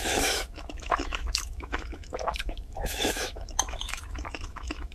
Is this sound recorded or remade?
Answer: remade